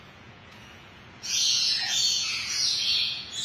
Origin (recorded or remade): remade